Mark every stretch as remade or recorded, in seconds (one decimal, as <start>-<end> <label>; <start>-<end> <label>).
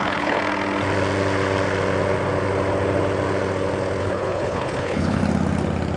0.0-0.4 remade; 0.4-4.0 recorded; 4.0-5.2 remade; 5.2-6.0 recorded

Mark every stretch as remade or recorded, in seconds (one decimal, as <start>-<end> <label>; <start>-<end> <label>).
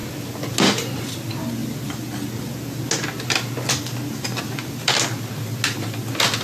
0.0-6.4 recorded